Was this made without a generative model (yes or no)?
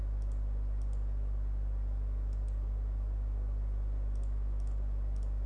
yes